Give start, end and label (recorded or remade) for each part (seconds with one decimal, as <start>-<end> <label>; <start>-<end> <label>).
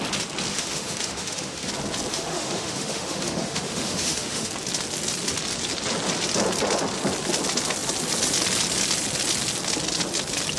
0.0-0.5 recorded; 0.5-1.7 remade; 1.7-2.1 recorded; 2.1-4.5 remade; 4.5-10.6 recorded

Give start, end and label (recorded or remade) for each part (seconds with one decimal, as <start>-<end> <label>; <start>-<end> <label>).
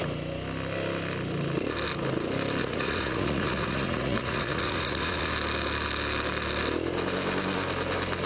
0.0-2.6 recorded; 2.6-5.3 remade; 5.3-8.3 recorded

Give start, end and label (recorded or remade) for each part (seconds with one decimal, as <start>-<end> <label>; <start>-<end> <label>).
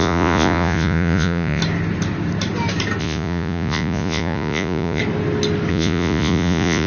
0.0-1.6 remade; 1.6-3.0 recorded; 3.0-5.0 remade; 5.0-5.7 recorded; 5.7-6.9 remade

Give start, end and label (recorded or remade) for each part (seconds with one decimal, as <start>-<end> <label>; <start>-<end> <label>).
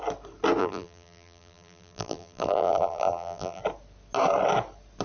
0.0-0.6 recorded; 0.6-3.6 remade; 3.6-5.0 recorded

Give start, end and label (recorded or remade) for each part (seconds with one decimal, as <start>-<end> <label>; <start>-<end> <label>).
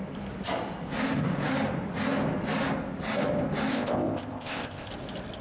0.0-3.7 recorded; 3.7-4.9 remade; 4.9-5.4 recorded